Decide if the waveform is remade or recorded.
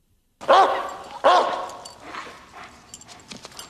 recorded